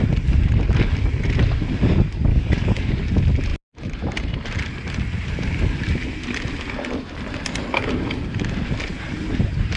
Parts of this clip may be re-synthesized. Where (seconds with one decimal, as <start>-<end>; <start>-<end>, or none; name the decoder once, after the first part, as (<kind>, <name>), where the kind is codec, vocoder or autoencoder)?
2.3-2.9 (codec, DAC)